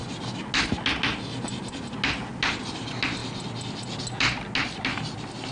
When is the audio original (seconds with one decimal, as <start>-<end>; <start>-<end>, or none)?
0.0-5.5